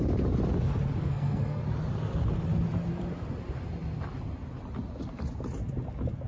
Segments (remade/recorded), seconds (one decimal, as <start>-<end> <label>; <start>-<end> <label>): 0.0-1.0 recorded; 1.0-1.6 remade; 1.6-6.3 recorded